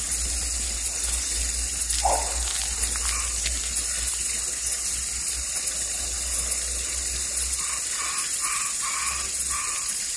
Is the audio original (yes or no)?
yes